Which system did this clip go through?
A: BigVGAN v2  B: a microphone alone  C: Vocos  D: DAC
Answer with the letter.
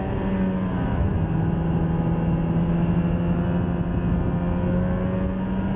B